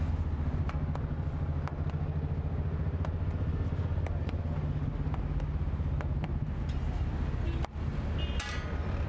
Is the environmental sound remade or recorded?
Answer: recorded